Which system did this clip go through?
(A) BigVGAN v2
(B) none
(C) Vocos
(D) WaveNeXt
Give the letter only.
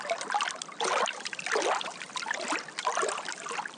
A